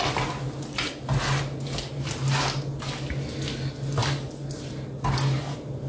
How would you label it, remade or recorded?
recorded